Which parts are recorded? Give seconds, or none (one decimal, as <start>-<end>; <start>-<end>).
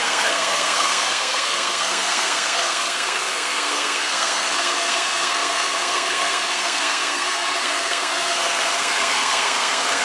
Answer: none